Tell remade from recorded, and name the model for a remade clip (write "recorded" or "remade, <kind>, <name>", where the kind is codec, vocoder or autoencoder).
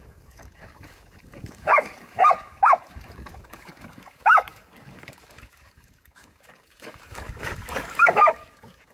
remade, codec, DAC